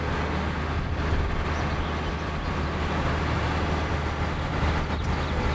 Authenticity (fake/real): real